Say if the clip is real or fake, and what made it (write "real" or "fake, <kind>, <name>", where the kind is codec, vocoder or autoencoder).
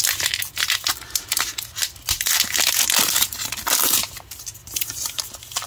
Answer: real